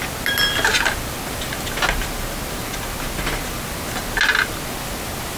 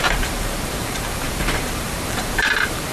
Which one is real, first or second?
first